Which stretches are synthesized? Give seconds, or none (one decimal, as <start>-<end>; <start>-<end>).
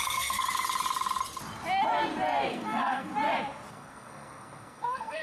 0.0-0.4; 2.5-3.1; 3.7-5.2